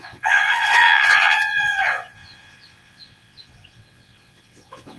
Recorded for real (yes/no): no